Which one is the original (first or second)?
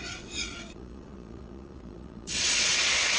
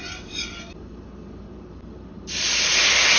second